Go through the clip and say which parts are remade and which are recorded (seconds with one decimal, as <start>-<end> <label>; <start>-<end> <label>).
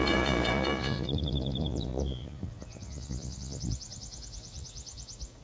0.0-5.4 remade